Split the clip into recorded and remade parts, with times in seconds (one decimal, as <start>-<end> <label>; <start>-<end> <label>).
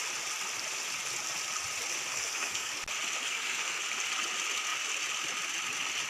0.0-2.1 recorded; 2.1-2.7 remade; 2.7-3.2 recorded; 3.2-3.8 remade; 3.8-6.1 recorded